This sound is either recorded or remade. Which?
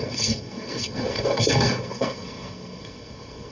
remade